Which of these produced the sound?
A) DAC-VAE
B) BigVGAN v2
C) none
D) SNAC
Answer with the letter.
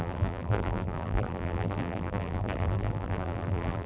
B